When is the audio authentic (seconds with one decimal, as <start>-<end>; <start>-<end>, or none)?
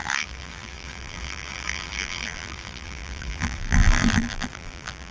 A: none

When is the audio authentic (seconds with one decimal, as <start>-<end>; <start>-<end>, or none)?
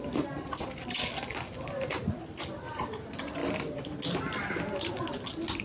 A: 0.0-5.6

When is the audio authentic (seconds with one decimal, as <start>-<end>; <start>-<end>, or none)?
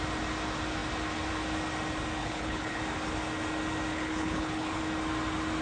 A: 0.0-2.2; 2.8-3.9; 4.8-5.6